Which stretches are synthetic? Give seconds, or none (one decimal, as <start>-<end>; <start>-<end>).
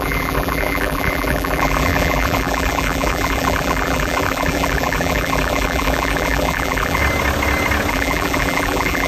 0.0-7.0; 7.9-9.1